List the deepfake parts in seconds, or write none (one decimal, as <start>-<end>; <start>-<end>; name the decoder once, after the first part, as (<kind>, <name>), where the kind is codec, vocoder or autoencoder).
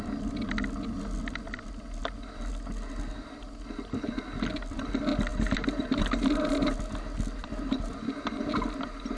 5.3-6.8 (vocoder, BigVGAN v2); 7.4-8.0